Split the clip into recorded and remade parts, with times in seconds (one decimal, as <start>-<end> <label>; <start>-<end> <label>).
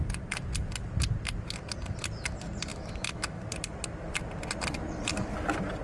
0.0-2.7 recorded; 2.7-3.4 remade; 3.4-5.8 recorded